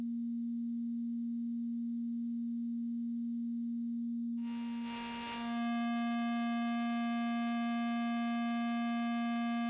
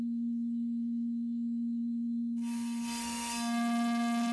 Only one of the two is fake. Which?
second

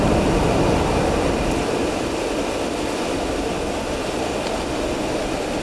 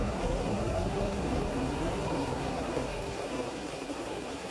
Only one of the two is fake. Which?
second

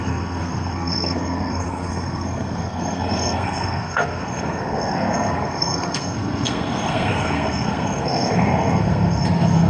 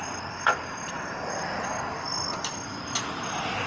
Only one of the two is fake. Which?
first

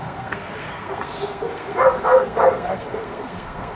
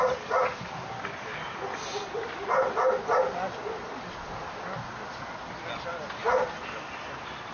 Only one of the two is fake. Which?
first